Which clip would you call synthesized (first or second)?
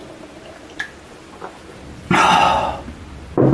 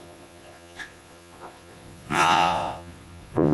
second